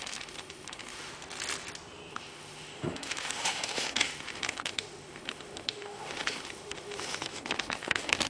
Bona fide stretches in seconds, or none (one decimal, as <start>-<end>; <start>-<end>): 1.1-2.1